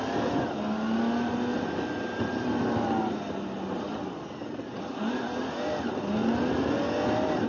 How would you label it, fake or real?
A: real